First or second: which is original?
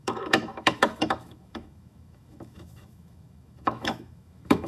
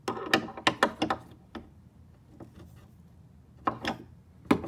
second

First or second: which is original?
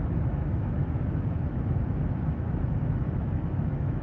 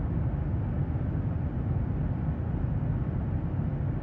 second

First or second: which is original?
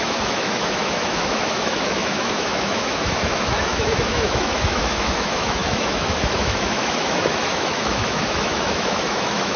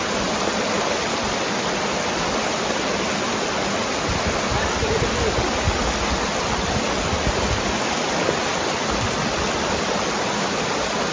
second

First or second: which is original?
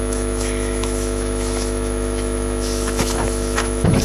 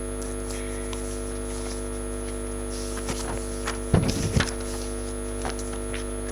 second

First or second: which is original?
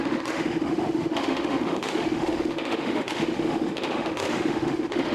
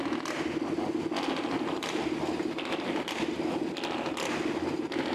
second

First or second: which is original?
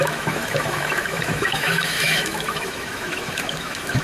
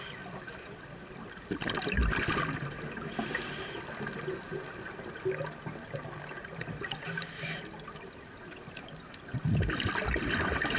second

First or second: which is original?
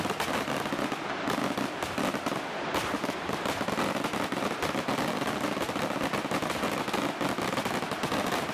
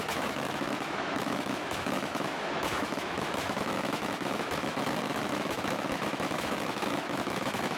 first